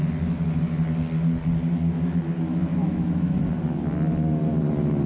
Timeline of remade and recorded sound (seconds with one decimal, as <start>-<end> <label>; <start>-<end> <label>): 0.0-2.7 recorded; 2.7-3.4 remade; 3.4-5.1 recorded